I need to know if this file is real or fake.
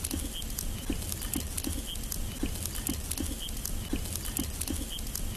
real